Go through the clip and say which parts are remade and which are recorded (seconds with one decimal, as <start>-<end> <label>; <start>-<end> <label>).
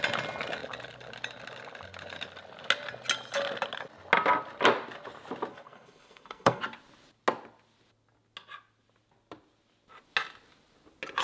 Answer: 0.0-5.5 recorded; 5.5-6.6 remade; 6.6-11.2 recorded